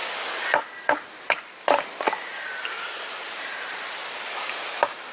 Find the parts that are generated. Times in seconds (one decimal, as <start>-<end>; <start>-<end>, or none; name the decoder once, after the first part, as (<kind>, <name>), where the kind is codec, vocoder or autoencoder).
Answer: 3.1-5.1 (vocoder, BigVGAN v2)